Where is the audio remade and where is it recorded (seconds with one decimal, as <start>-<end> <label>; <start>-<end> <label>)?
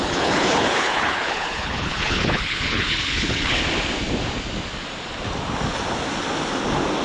0.0-3.6 remade; 3.6-7.0 recorded